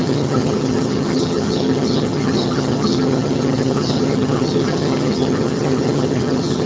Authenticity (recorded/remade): remade